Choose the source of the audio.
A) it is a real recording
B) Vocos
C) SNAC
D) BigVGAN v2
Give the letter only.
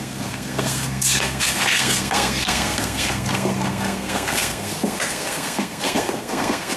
C